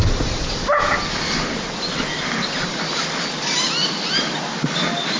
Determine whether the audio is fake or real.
real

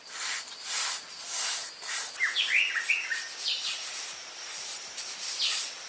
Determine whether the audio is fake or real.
real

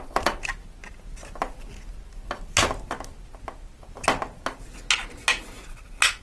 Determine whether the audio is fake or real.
real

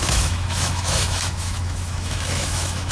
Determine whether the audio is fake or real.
fake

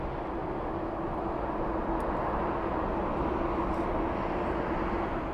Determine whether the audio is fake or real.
real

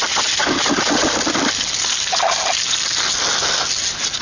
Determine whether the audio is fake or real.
real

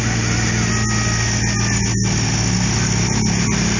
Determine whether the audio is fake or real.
real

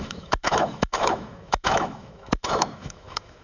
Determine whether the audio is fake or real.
fake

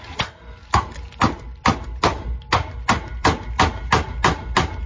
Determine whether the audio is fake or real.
real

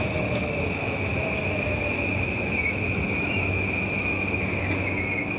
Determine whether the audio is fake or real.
fake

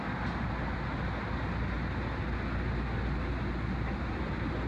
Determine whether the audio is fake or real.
real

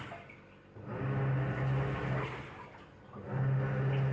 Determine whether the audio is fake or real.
real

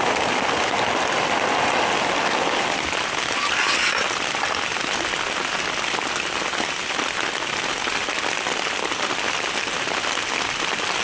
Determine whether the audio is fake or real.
real